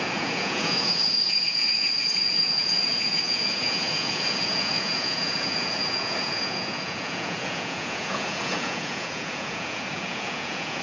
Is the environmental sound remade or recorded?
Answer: remade